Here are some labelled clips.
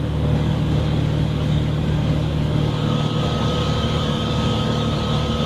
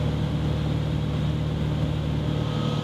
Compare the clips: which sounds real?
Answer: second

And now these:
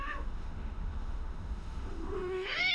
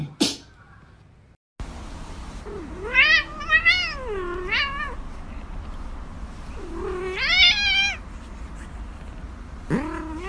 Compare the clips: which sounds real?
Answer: second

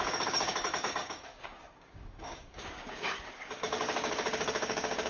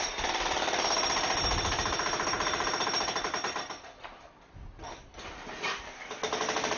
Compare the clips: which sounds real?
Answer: second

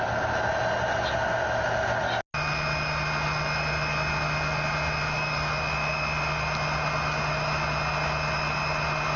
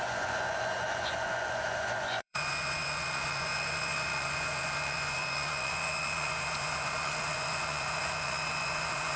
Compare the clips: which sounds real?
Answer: first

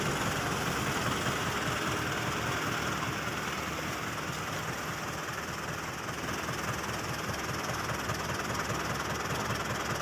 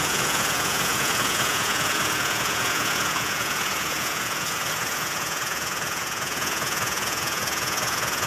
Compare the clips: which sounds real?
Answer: first